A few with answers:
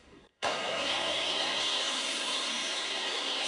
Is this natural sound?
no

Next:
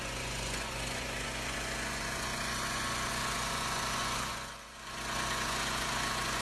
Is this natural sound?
no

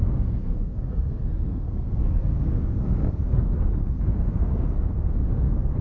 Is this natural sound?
no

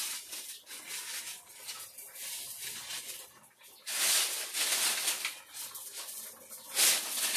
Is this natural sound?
yes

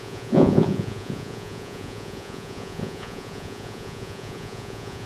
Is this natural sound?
no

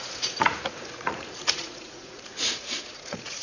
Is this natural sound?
no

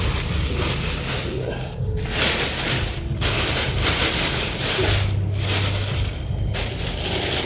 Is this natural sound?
yes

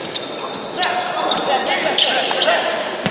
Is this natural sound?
yes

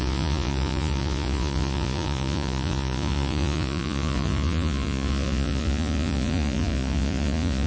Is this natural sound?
no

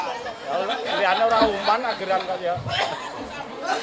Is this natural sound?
no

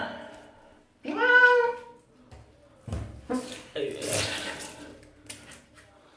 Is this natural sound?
yes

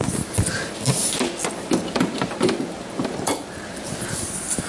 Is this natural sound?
yes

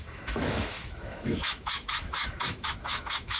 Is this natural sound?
no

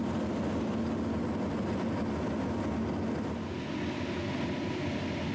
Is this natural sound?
yes